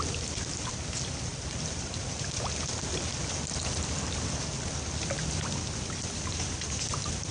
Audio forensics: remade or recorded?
recorded